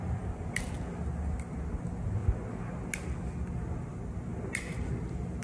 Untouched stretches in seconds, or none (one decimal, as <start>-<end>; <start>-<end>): 0.0-5.4